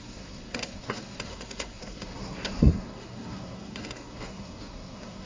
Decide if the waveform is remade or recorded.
remade